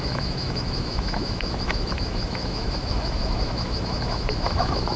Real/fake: fake